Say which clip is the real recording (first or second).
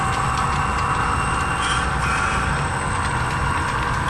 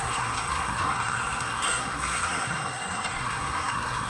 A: first